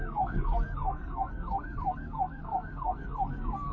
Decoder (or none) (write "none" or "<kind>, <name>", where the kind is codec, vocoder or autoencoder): codec, SNAC